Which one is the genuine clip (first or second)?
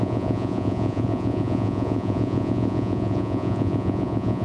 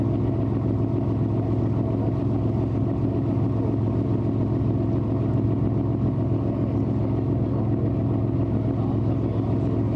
second